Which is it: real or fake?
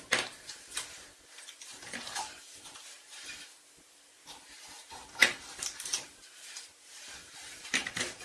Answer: fake